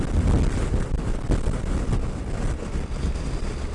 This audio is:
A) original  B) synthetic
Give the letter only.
A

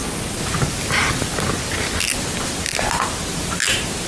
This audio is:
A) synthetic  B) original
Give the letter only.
B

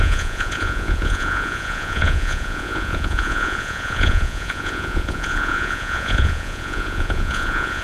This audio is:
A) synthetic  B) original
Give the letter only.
A